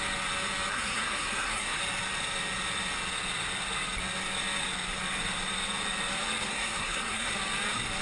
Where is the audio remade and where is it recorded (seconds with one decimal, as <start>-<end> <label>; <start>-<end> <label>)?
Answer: 0.0-0.7 recorded; 0.7-1.8 remade; 1.8-6.5 recorded; 6.5-7.3 remade; 7.3-8.0 recorded